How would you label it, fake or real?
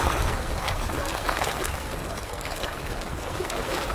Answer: fake